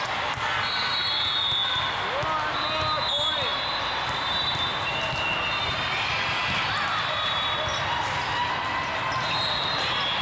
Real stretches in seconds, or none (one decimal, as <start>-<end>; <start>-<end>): 0.0-3.5; 7.6-10.2

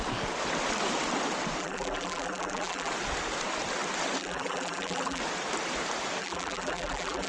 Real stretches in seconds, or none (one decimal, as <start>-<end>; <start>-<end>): 0.0-1.6; 2.9-4.2; 5.2-6.2